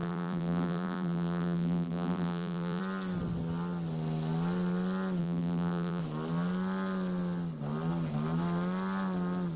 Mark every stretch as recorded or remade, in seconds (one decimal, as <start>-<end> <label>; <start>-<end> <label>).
0.0-2.8 remade; 2.8-5.2 recorded; 5.2-6.0 remade; 6.0-9.6 recorded